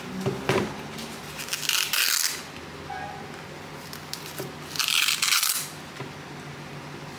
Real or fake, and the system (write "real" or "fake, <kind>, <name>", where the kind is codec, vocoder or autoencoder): real